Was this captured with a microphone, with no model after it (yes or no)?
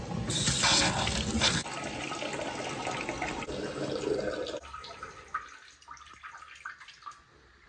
yes